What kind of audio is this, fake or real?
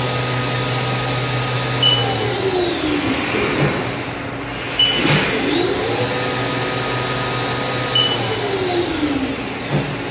real